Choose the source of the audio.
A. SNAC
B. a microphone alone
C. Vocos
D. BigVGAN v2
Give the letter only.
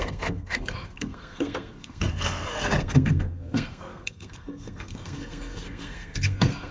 A